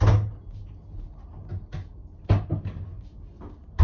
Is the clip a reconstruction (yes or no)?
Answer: no